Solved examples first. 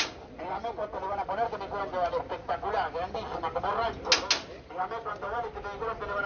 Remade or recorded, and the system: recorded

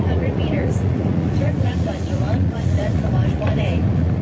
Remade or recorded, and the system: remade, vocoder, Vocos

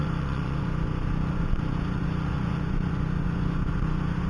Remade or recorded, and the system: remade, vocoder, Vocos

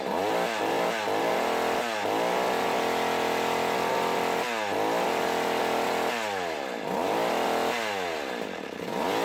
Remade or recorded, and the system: recorded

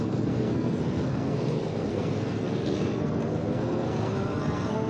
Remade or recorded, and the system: remade, codec, SNAC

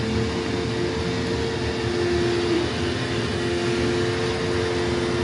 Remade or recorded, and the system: recorded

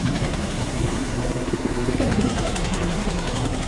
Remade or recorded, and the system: remade, codec, SNAC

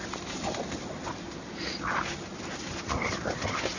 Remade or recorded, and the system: recorded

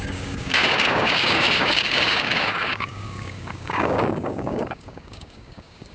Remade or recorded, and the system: remade, codec, DAC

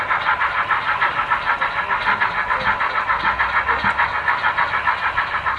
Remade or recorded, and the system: recorded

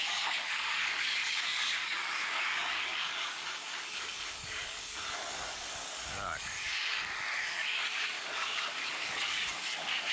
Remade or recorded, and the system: remade, codec, DAC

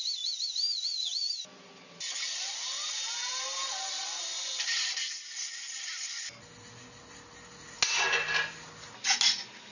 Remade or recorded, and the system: recorded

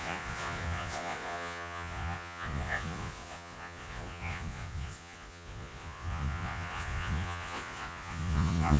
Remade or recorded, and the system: remade, vocoder, Vocos